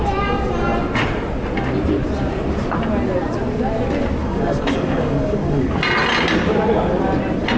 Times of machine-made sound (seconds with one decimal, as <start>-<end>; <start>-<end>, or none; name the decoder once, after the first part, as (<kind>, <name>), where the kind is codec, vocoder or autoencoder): 4.2-5.7 (codec, DAC)